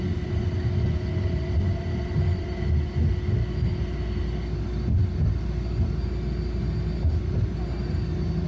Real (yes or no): yes